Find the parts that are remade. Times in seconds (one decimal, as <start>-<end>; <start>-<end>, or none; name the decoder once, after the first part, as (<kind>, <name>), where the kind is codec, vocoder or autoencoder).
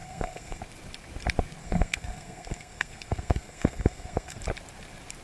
0.0-0.6 (codec, SNAC); 1.6-4.4